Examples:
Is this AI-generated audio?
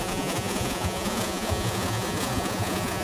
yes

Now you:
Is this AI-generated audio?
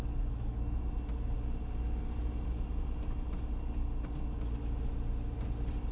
no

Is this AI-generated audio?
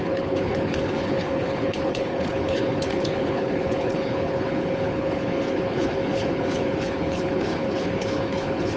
yes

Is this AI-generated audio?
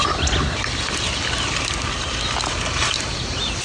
no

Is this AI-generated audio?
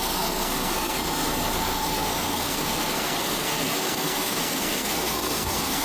yes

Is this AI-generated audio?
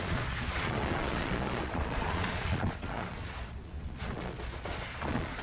yes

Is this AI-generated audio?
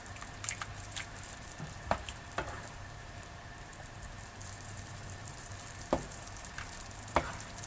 yes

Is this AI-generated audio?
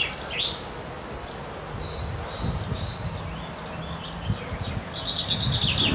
no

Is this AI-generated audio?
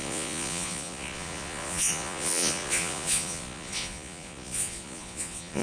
yes